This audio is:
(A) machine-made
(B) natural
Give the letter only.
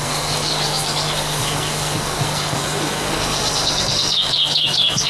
A